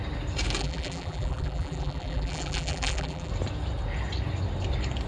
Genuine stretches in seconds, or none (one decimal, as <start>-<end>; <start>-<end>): 0.0-0.6; 3.3-5.1